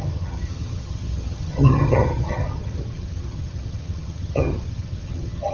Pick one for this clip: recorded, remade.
remade